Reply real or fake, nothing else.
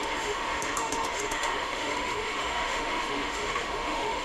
fake